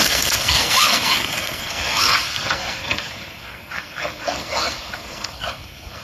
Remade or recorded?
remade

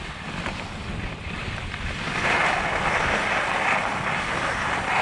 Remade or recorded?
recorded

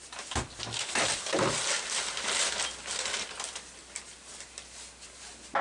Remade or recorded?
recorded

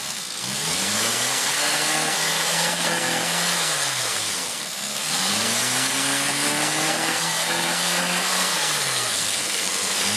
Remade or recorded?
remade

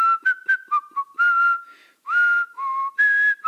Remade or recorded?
recorded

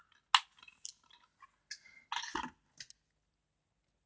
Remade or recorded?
recorded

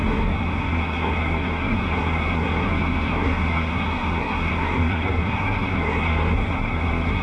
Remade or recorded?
remade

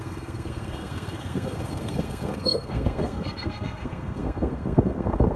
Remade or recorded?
remade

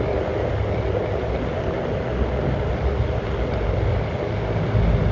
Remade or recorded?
recorded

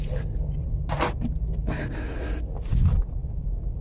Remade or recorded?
recorded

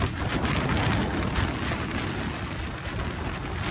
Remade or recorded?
recorded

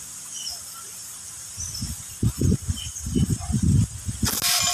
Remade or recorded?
recorded